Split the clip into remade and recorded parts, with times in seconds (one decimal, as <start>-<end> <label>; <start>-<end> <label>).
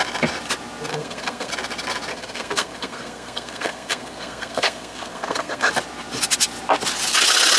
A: 0.0-0.9 recorded; 0.9-1.5 remade; 1.5-2.1 recorded; 2.1-5.7 remade; 5.7-7.6 recorded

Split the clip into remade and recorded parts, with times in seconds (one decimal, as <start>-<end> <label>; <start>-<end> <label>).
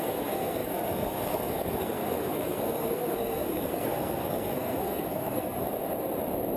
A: 0.0-5.6 remade; 5.6-6.6 recorded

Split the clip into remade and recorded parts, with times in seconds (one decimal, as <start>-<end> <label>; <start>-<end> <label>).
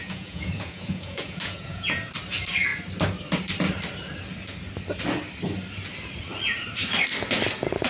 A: 0.0-2.1 remade; 2.1-7.9 recorded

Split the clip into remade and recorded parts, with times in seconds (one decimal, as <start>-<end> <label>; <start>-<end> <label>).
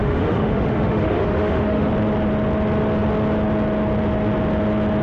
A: 0.0-1.9 remade; 1.9-5.0 recorded